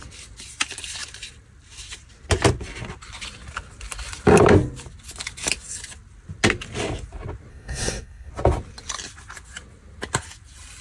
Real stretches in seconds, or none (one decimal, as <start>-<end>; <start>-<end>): 0.0-7.5; 8.3-10.8